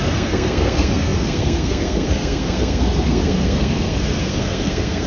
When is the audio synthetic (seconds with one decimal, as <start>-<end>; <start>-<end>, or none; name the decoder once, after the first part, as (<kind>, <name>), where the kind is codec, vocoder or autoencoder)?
0.0-5.1 (codec, SNAC)